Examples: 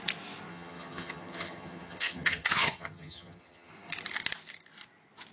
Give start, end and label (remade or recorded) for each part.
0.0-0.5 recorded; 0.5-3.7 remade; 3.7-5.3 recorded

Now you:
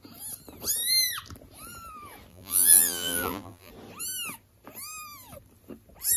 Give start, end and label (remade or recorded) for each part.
0.0-2.3 recorded; 2.3-3.7 remade; 3.7-6.2 recorded

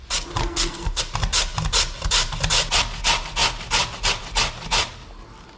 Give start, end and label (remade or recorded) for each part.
0.0-0.4 recorded; 0.4-1.0 remade; 1.0-5.6 recorded